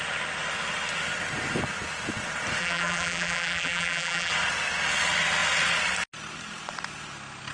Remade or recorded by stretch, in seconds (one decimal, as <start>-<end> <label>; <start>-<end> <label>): 0.0-2.6 recorded; 2.6-4.3 remade; 4.3-7.5 recorded